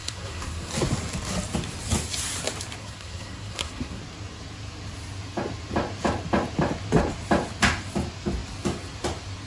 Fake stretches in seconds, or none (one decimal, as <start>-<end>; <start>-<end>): 0.0-0.7; 2.8-4.0